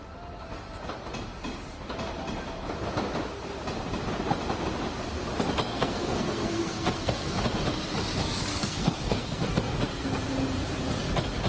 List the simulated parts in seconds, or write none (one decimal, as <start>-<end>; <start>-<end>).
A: 5.7-7.4; 8.2-10.1